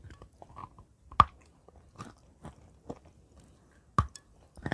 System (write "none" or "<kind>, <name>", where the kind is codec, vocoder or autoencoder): none